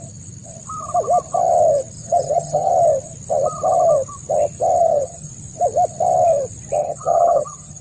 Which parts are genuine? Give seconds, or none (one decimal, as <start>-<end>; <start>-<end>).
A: 0.0-2.0; 2.7-4.8; 5.3-6.8